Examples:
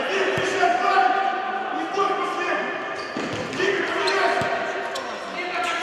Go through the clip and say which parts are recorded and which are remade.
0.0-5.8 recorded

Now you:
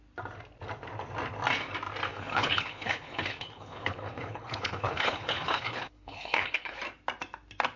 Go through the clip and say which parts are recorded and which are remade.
0.0-2.1 recorded; 2.1-6.8 remade; 6.8-7.8 recorded

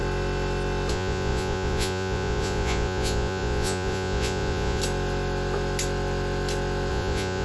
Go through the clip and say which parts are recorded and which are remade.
0.0-0.9 recorded; 0.9-4.8 remade; 4.8-6.9 recorded; 6.9-7.4 remade

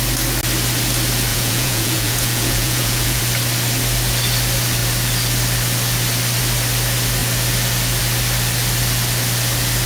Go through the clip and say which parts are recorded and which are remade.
0.0-1.3 recorded; 1.3-3.2 remade; 3.2-9.9 recorded

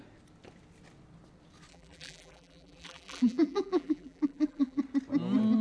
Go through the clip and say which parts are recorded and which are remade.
0.0-1.7 recorded; 1.7-4.8 remade; 4.8-5.6 recorded